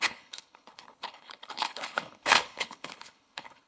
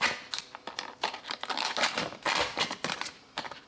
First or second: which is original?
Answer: second